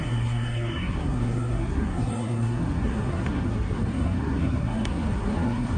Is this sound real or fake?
fake